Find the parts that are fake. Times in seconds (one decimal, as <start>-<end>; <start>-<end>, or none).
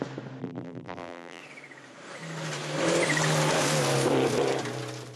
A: 0.4-1.4